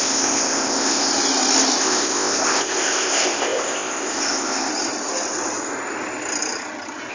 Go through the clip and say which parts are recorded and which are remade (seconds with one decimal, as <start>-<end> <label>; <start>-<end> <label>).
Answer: 0.0-1.1 remade; 1.1-1.8 recorded; 1.8-4.7 remade; 4.7-7.1 recorded